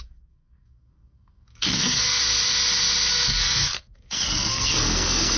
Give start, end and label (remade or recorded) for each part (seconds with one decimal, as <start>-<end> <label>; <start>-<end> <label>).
0.0-2.2 remade; 2.2-3.1 recorded; 3.1-5.4 remade